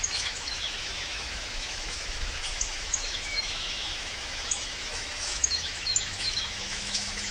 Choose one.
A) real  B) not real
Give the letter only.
B